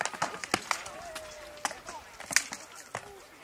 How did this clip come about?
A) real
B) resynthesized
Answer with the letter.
A